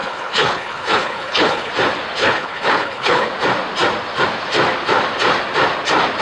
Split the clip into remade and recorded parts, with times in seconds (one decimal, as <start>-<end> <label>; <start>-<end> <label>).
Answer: 0.0-1.7 remade; 1.7-2.2 recorded; 2.2-3.3 remade; 3.3-6.2 recorded